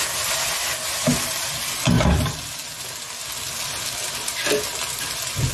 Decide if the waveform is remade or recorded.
recorded